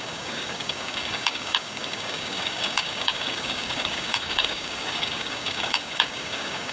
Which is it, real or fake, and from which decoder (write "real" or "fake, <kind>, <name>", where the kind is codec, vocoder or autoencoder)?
fake, codec, DAC